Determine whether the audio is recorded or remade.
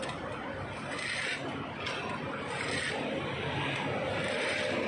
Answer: recorded